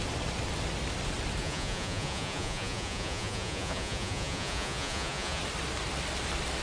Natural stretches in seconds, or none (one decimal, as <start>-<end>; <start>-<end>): 0.0-1.4; 5.4-6.6